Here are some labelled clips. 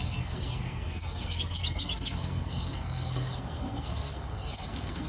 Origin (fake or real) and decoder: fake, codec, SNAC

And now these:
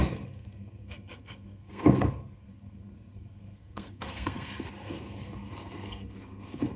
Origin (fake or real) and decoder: fake, codec, SNAC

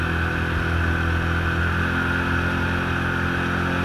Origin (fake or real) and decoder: real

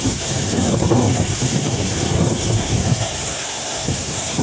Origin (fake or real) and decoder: fake, codec, SNAC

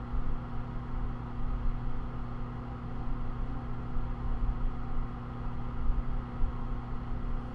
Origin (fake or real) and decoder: real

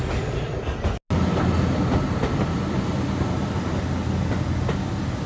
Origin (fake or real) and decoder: real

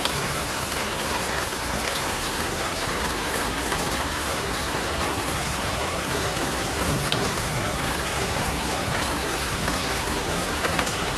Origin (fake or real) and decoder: fake, codec, SNAC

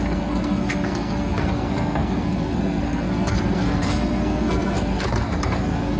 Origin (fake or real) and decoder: fake, codec, SNAC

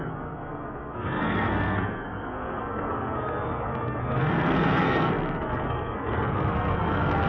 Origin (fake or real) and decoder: fake, codec, SNAC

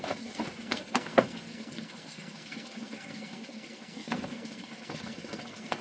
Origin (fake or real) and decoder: fake, codec, SNAC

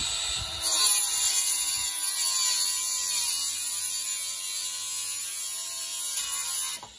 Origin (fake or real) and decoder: real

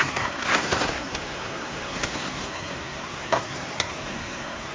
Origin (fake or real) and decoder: fake, codec, SNAC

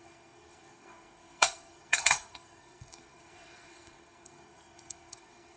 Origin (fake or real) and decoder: fake, codec, SNAC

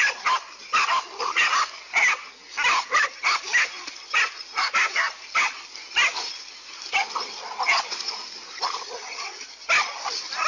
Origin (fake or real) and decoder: real